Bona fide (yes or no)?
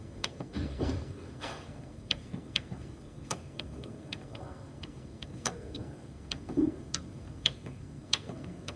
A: no